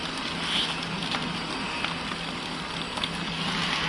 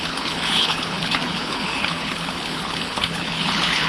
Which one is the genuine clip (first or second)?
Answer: first